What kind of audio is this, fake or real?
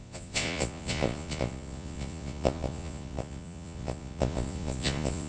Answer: fake